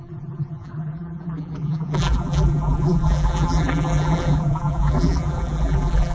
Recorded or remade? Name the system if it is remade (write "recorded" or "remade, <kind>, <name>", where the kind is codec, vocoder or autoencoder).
remade, vocoder, BigVGAN v2